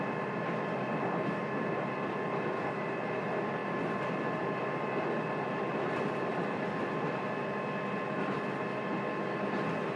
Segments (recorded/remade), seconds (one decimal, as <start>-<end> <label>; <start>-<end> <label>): 0.0-10.0 recorded